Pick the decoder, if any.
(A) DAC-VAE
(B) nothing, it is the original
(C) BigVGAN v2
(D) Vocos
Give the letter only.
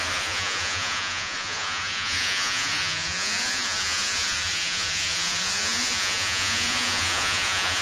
D